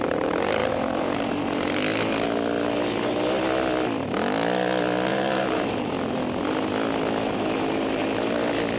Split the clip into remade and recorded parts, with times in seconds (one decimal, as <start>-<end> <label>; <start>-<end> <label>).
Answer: 0.0-0.6 recorded; 0.6-1.3 remade; 1.3-5.1 recorded; 5.1-5.9 remade; 5.9-8.8 recorded